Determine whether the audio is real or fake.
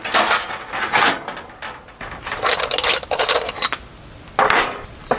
real